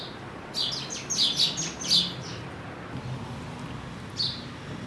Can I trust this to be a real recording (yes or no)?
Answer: yes